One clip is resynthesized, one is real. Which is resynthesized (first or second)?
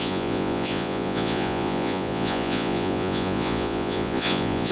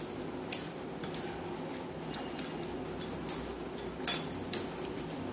first